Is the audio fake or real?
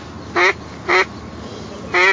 real